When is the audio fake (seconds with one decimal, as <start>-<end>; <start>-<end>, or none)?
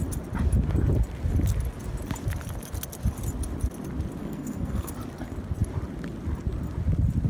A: 4.2-4.9